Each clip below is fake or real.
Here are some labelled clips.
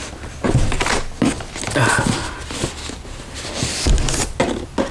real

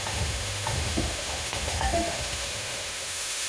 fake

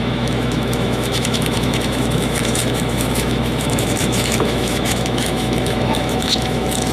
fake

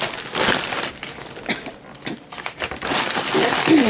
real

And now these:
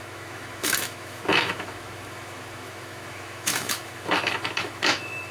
fake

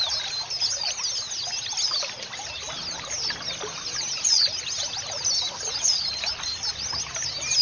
real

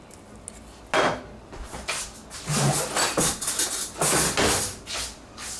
real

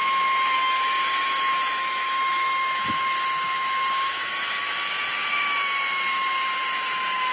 fake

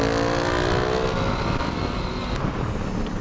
real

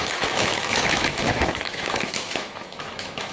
fake